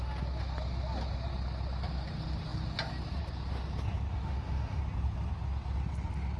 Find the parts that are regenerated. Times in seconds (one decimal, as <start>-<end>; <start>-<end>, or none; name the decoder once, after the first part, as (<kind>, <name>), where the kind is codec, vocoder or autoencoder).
4.1-4.8 (autoencoder, DAC-VAE)